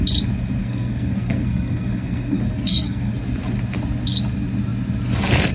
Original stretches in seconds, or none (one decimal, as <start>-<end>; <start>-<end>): 0.0-0.6; 3.1-5.5